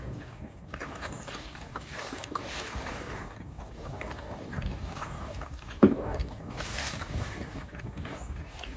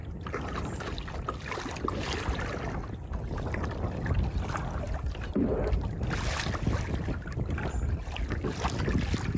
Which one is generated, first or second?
first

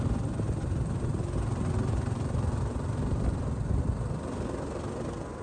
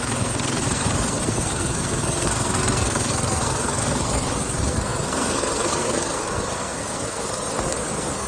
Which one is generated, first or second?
second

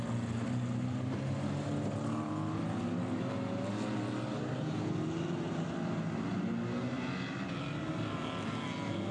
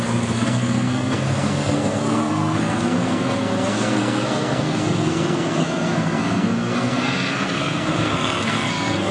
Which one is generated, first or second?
second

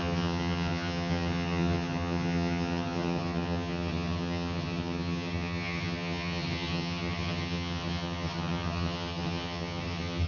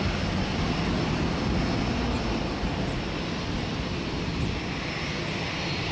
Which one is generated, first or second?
first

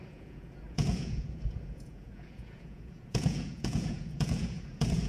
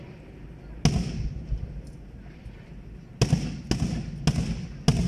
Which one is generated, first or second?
first